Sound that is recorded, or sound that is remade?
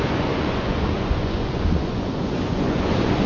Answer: remade